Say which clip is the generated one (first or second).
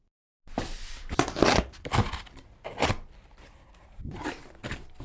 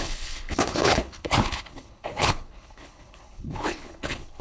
second